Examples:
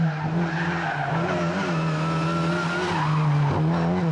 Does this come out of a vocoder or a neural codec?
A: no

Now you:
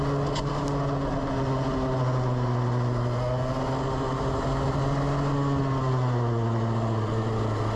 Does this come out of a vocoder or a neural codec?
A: no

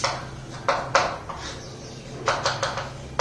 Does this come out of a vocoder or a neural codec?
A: no